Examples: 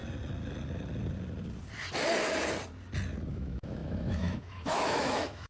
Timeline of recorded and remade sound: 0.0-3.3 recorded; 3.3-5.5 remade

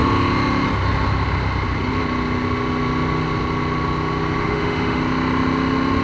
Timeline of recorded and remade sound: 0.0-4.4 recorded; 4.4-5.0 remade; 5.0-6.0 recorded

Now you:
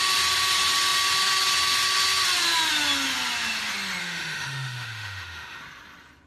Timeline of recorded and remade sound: 0.0-4.0 recorded; 4.0-5.6 remade; 5.6-6.3 recorded

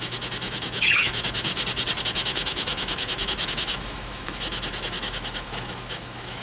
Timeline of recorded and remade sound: 0.0-1.5 remade; 1.5-2.0 recorded; 2.0-6.4 remade